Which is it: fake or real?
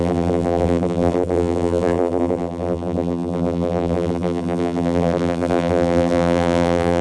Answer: fake